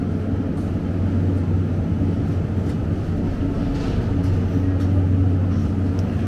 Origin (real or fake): real